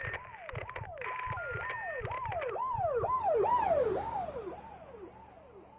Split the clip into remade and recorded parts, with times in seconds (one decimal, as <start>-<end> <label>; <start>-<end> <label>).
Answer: 0.0-5.8 recorded